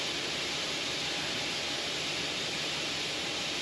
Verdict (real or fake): real